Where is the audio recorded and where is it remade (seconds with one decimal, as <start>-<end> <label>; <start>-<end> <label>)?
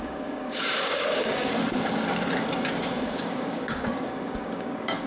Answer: 0.0-1.5 remade; 1.5-2.9 recorded; 2.9-5.1 remade